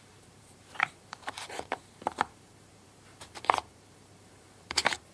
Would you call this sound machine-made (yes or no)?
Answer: yes